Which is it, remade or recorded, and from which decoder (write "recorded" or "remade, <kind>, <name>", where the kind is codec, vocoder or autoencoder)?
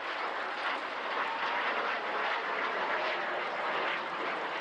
recorded